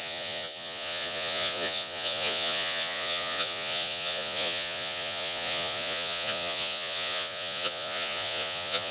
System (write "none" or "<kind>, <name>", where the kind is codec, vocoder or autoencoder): vocoder, Vocos